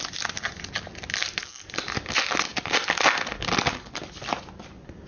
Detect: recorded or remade recorded